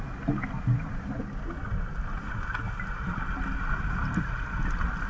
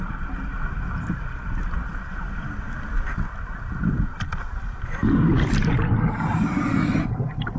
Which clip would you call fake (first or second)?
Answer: second